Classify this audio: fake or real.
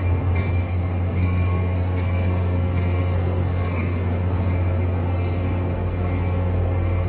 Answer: fake